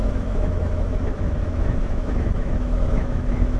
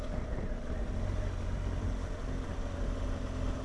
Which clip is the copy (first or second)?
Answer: first